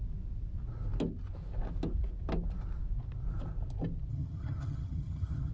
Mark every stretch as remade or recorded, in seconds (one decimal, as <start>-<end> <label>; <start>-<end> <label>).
0.0-4.1 recorded; 4.1-5.5 remade